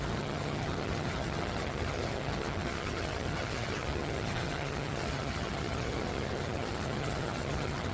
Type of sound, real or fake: fake